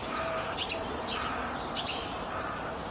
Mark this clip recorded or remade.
remade